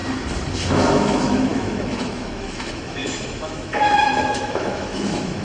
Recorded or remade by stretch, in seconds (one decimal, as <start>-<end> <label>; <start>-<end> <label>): 0.0-0.7 recorded; 0.7-5.4 remade